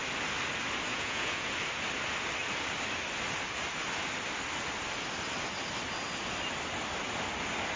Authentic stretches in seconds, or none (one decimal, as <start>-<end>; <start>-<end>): 0.0-0.9; 1.5-7.8